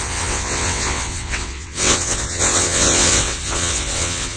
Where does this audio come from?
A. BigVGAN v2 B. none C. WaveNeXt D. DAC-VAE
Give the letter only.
C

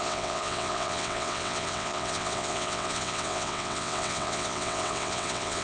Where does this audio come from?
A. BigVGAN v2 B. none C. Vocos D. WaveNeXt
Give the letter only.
D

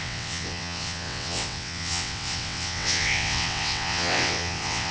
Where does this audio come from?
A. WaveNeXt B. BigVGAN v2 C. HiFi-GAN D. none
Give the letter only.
A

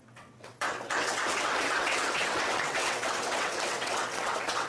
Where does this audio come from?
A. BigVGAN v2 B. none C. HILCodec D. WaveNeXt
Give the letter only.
D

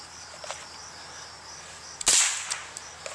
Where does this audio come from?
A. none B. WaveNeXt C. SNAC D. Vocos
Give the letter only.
A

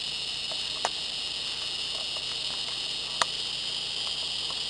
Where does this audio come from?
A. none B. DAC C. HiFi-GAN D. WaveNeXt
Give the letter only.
A